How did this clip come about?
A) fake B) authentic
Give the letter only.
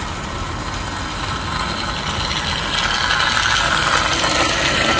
B